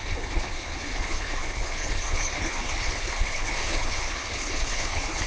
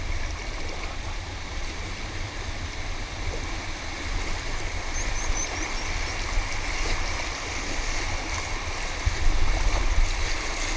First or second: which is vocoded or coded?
first